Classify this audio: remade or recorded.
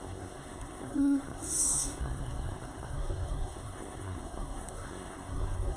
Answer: remade